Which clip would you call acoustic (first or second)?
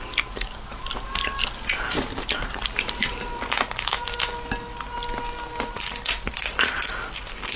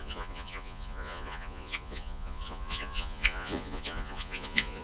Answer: first